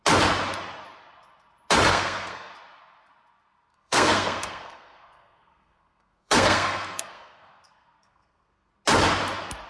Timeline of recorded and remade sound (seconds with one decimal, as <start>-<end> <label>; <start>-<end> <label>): 0.0-1.9 recorded; 1.9-2.5 remade; 2.5-3.7 recorded; 3.7-8.7 remade; 8.7-9.7 recorded